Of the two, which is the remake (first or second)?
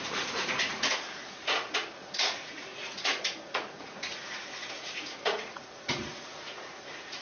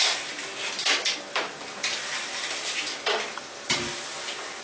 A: first